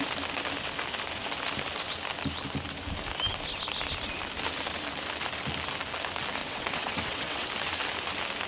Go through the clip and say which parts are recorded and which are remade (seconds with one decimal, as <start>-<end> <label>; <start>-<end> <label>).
0.0-6.4 recorded; 6.4-7.5 remade; 7.5-8.5 recorded

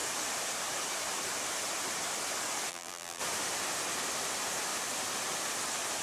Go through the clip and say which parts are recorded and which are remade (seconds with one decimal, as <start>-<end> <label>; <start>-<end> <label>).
0.0-2.7 recorded; 2.7-3.2 remade; 3.2-6.0 recorded

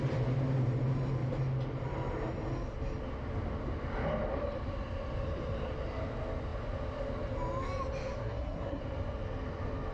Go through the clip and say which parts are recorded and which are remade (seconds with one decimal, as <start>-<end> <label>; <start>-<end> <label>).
0.0-8.2 recorded; 8.2-8.8 remade; 8.8-9.9 recorded

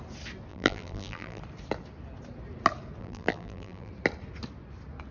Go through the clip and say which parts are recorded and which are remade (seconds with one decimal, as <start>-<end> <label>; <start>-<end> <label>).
0.0-0.5 recorded; 0.5-1.4 remade; 1.4-3.0 recorded; 3.0-3.9 remade; 3.9-5.1 recorded

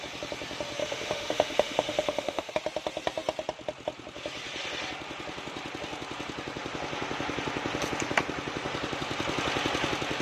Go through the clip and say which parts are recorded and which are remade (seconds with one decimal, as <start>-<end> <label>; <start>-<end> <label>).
0.0-0.8 recorded; 0.8-2.5 remade; 2.5-10.2 recorded

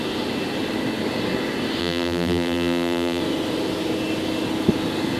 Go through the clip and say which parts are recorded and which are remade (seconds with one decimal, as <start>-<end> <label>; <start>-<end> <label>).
0.0-1.8 recorded; 1.8-3.2 remade; 3.2-5.2 recorded

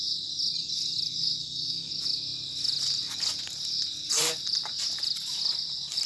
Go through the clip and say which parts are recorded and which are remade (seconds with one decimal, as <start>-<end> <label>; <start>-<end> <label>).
0.0-1.4 recorded; 1.4-1.9 remade; 1.9-6.1 recorded